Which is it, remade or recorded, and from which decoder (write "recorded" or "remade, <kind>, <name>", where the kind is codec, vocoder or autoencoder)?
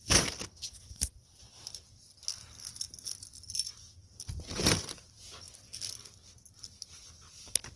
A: recorded